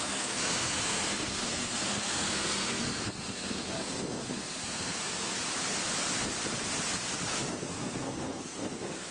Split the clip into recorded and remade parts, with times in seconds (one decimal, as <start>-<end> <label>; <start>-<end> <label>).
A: 0.0-5.4 remade; 5.4-7.5 recorded; 7.5-9.1 remade